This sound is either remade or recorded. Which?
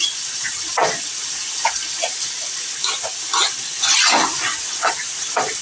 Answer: recorded